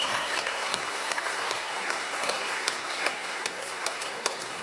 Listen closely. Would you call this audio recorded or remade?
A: remade